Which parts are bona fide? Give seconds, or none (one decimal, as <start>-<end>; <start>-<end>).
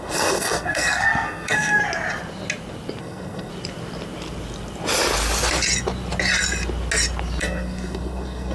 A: 1.8-3.0; 3.5-7.4